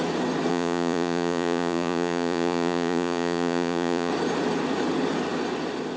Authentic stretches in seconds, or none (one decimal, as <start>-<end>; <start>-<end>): 0.0-0.5; 4.1-6.0